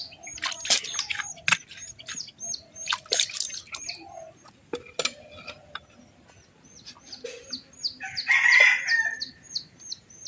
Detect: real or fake real